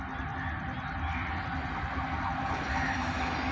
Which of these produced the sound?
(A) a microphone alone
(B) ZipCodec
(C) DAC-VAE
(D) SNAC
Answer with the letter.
A